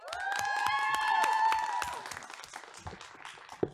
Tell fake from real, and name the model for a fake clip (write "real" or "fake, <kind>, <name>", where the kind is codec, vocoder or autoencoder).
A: real